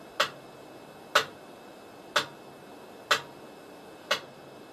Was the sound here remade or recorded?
recorded